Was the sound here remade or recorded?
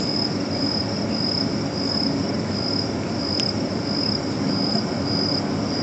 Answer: recorded